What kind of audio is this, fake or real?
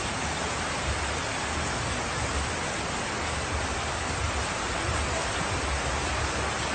real